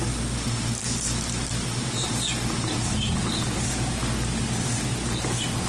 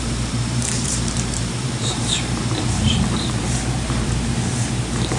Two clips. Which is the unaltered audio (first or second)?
first